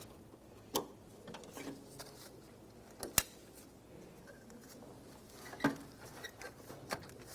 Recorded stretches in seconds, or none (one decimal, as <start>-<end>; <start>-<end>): 0.0-7.3